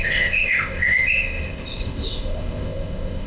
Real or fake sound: fake